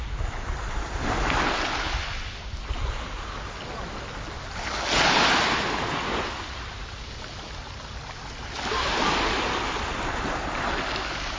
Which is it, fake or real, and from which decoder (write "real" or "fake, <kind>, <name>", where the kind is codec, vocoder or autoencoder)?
real